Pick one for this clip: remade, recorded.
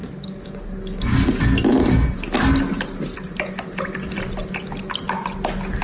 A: recorded